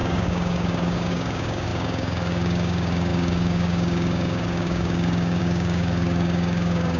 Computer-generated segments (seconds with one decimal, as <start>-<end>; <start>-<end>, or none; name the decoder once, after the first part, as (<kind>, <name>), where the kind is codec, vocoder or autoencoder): 0.0-7.0 (codec, DAC)